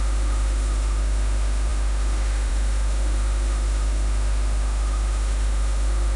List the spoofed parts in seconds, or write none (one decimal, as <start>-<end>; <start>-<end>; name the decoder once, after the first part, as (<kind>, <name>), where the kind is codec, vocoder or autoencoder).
0.0-6.2 (autoencoder, DAC-VAE)